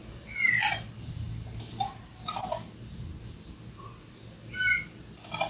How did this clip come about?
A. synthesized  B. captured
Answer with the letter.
B